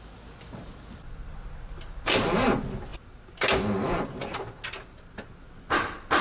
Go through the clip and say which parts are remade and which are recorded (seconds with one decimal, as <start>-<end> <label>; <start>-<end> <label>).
0.0-6.2 recorded

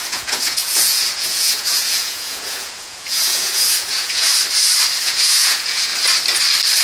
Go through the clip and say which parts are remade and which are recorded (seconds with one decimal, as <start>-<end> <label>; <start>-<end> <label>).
0.0-4.3 remade; 4.3-5.0 recorded; 5.0-5.9 remade; 5.9-6.8 recorded

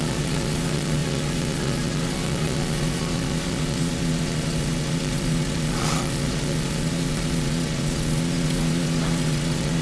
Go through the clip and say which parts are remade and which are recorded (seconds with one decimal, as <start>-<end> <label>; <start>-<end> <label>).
0.0-9.8 remade

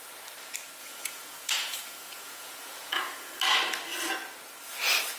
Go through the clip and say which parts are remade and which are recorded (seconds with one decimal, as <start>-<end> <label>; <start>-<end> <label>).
0.0-0.8 recorded; 0.8-3.4 remade; 3.4-5.2 recorded